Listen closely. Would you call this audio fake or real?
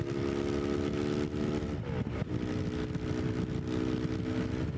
real